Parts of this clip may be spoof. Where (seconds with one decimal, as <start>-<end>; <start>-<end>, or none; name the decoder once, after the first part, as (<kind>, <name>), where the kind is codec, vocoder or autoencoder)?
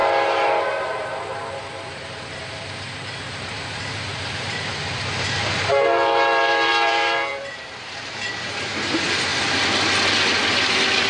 0.0-9.3 (vocoder, BigVGAN v2)